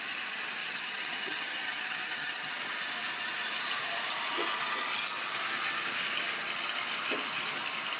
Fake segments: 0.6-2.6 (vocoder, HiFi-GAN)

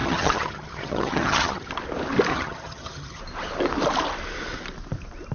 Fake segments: 0.0-1.7 (vocoder, HiFi-GAN); 2.3-3.2

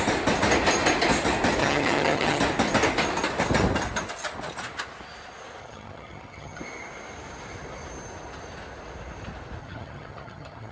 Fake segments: 1.6-2.4 (vocoder, HiFi-GAN); 5.6-6.6; 9.6-10.7

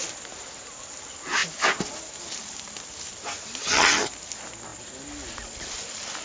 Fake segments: 3.6-4.1 (vocoder, HiFi-GAN)

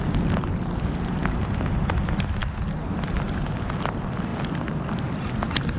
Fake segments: none

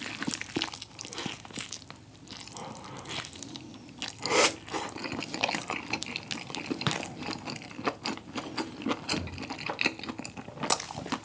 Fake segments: none